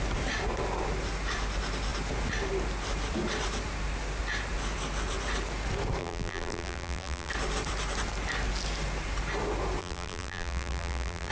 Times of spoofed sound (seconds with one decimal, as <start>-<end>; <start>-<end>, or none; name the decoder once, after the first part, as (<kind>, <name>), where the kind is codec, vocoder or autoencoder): 6.0-7.3 (vocoder, BigVGAN v2); 9.8-11.3